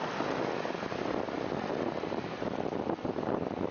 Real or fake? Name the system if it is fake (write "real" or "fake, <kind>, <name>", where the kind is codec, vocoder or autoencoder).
real